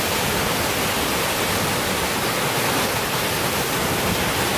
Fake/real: real